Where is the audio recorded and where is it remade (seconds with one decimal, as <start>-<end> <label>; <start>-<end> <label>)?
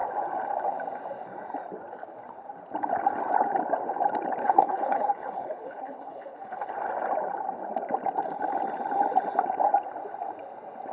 0.0-4.4 recorded; 4.4-6.7 remade; 6.7-10.9 recorded